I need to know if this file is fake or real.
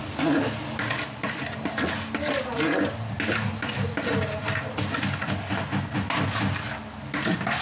real